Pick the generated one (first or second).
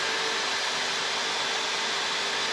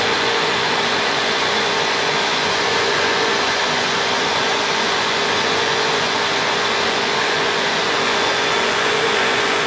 second